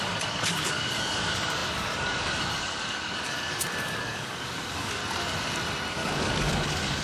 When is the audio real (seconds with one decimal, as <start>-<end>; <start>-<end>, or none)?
5.0-5.9